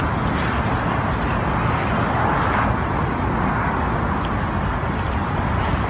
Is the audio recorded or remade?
recorded